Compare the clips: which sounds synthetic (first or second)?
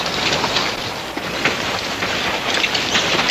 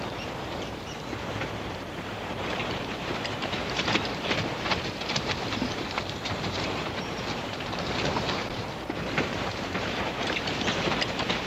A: second